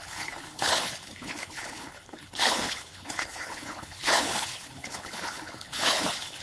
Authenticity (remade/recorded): remade